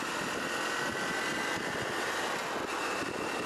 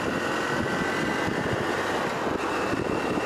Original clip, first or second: first